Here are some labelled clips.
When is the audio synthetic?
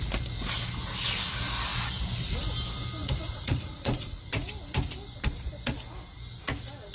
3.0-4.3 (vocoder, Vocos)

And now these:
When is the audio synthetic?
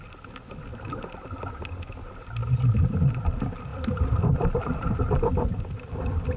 0.0-2.4 (vocoder, BigVGAN v2); 3.1-6.4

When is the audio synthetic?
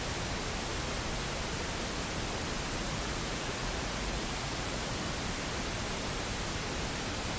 2.8-4.9 (vocoder, Vocos)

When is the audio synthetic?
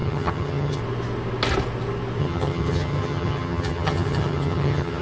0.0-0.8 (vocoder, HiFi-GAN); 2.2-5.0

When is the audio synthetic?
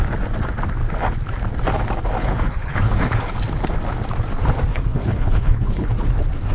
2.2-3.0 (codec, HILCodec); 4.7-5.9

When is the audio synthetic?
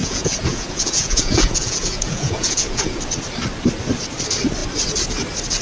0.0-3.0 (vocoder, Vocos)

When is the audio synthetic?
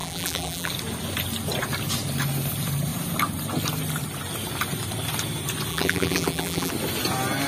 0.0-0.7 (vocoder, BigVGAN v2); 5.7-6.7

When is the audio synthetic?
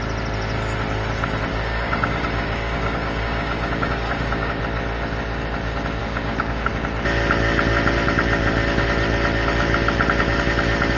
1.5-4.6 (codec, DAC); 6.0-6.7